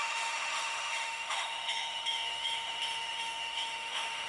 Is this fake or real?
fake